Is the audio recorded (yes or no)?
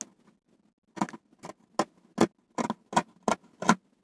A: yes